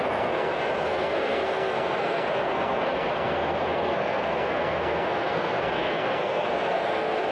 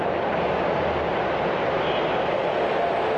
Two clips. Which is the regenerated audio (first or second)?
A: first